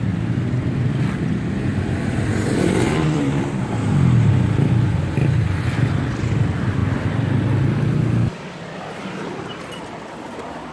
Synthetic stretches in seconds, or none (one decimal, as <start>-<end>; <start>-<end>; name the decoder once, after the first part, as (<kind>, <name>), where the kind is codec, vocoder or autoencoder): 1.7-3.6 (vocoder, BigVGAN v2)